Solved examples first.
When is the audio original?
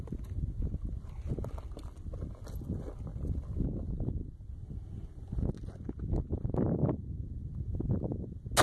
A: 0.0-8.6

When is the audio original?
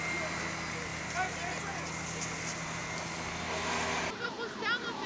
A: 0.0-5.1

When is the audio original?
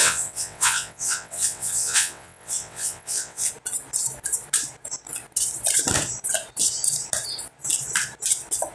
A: 3.5-8.7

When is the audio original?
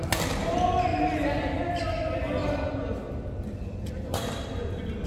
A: 0.0-5.1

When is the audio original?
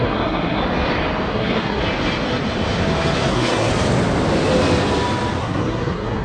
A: 0.6-1.3; 1.8-3.3; 3.7-5.4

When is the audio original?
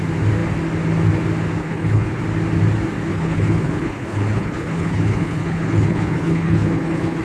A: 0.0-1.6; 2.2-3.1